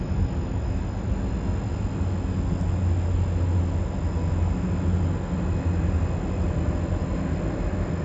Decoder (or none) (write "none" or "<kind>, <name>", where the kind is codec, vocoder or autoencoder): none